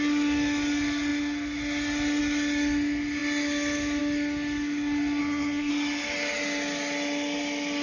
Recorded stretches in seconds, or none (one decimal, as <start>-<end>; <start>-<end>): 0.0-5.2; 5.7-7.8